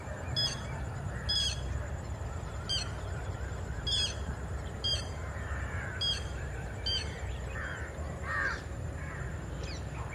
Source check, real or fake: fake